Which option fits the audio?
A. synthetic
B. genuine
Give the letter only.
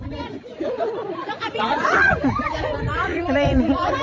A